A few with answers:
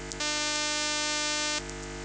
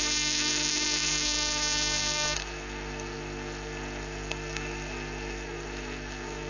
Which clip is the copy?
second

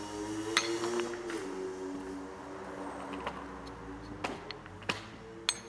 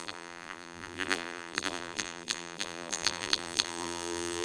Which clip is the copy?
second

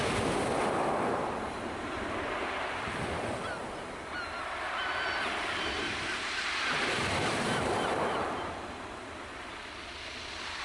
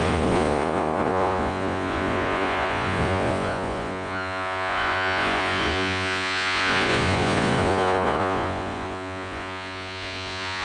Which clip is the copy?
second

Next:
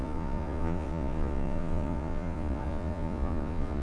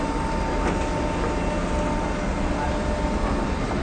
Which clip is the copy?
first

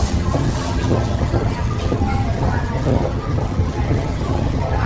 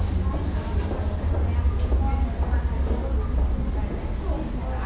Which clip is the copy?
first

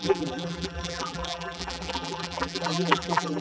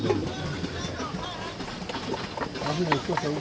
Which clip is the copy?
first